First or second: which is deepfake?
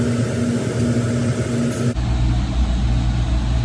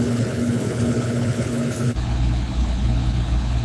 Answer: second